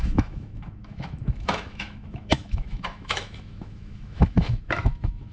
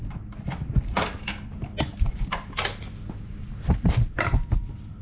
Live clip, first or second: second